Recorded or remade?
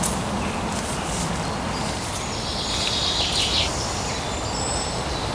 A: recorded